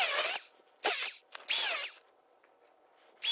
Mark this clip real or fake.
real